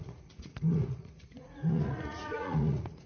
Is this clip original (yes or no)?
no